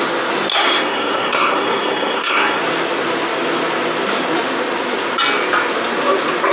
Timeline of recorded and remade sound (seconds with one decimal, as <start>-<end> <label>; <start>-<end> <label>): 0.0-0.5 recorded; 0.5-2.6 remade; 2.6-6.5 recorded